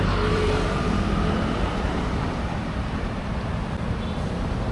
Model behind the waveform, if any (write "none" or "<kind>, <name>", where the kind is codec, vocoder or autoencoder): vocoder, BigVGAN v2